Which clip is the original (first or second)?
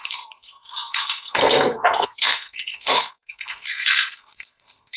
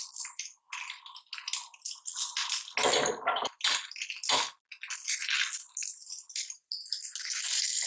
second